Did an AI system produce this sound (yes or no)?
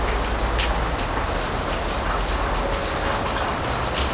no